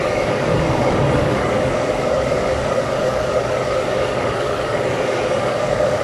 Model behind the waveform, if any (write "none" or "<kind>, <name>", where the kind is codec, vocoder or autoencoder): codec, DAC